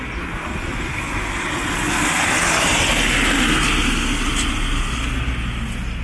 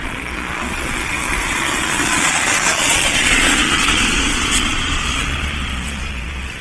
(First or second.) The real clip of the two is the first